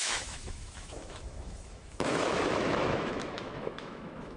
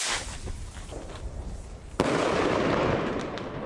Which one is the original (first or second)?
second